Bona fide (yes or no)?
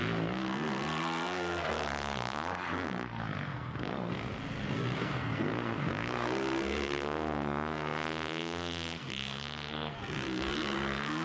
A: no